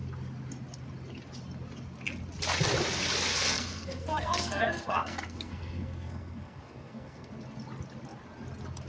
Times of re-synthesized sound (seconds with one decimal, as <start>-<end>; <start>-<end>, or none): 3.3-7.4